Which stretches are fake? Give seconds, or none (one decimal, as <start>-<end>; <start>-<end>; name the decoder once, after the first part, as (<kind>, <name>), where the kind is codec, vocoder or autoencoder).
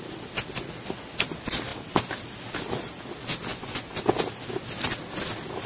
3.5-4.0 (vocoder, Vocos)